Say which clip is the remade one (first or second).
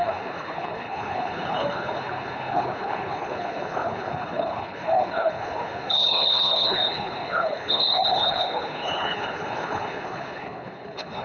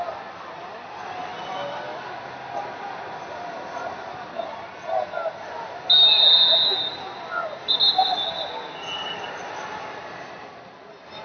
first